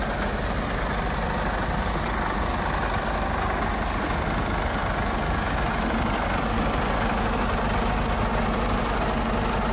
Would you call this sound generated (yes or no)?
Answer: no